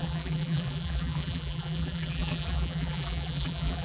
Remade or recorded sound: remade